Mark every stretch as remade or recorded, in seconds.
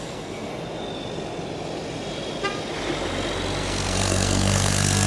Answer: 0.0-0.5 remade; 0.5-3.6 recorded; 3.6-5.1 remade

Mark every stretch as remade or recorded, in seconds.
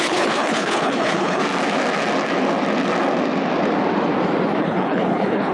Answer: 0.0-1.4 remade; 1.4-4.6 recorded; 4.6-5.5 remade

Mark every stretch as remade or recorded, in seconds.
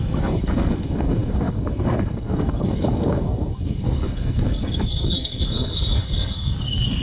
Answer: 0.0-7.0 remade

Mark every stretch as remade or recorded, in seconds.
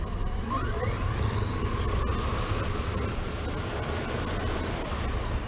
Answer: 0.0-5.5 recorded